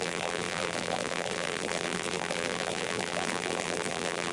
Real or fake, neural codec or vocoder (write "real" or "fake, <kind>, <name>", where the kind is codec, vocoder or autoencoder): fake, vocoder, BigVGAN v2